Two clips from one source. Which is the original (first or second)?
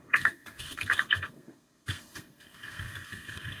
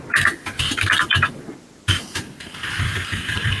second